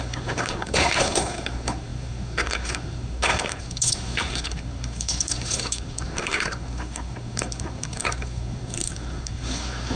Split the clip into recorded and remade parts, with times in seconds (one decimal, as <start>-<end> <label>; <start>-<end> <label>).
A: 0.0-10.0 remade